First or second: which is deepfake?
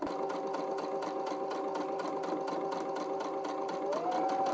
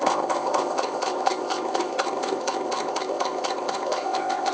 second